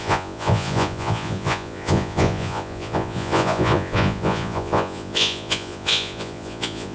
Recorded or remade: remade